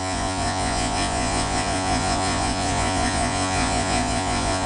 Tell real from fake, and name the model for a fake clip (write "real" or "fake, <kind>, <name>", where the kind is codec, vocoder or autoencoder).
fake, vocoder, Vocos